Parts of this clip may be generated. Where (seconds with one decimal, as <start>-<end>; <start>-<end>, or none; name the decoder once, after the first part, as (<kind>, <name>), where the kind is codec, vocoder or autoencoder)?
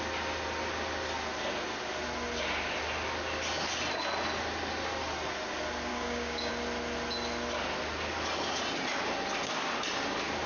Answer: 5.9-6.5 (codec, DAC)